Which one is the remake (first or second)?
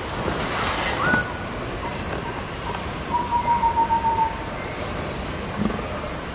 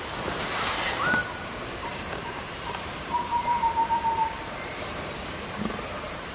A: second